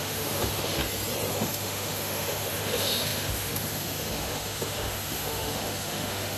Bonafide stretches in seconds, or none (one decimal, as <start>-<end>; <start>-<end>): 0.8-1.3